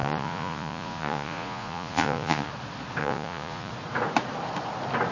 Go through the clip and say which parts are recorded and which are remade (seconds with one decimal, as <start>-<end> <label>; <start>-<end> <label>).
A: 0.0-2.5 remade; 2.5-3.0 recorded; 3.0-3.7 remade; 3.7-5.1 recorded